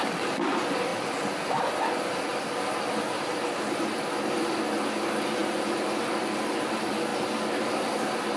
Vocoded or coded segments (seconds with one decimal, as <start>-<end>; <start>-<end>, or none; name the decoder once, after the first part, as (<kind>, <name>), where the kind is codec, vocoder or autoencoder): none